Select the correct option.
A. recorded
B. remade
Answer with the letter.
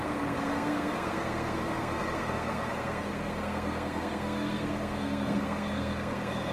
B